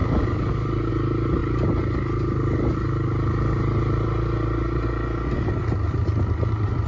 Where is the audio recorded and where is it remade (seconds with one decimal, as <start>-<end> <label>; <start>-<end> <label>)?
0.0-0.9 remade; 0.9-6.9 recorded